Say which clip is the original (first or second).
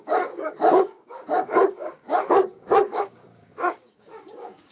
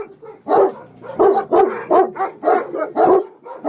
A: second